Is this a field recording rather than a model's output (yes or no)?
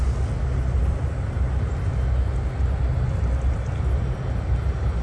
yes